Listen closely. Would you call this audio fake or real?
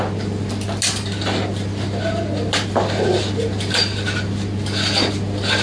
real